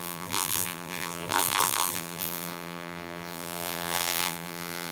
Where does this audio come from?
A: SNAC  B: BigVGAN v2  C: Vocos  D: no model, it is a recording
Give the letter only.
B